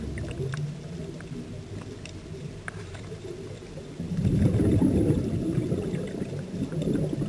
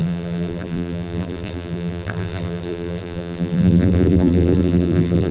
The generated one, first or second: second